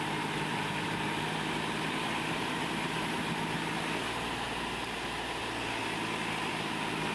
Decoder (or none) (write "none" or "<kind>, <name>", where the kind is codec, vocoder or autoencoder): none